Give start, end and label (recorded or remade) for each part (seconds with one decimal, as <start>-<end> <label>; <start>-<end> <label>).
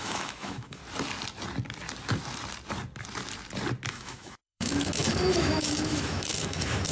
0.0-0.8 remade; 0.8-3.9 recorded; 3.9-6.9 remade